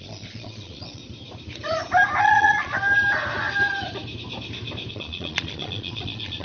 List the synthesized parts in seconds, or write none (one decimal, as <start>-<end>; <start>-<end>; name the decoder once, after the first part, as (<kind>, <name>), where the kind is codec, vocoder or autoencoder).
0.0-1.0 (vocoder, Vocos); 2.2-2.7; 4.9-6.4